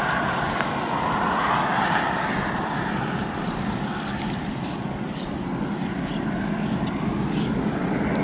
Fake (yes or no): no